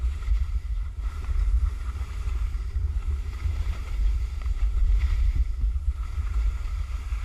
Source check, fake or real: fake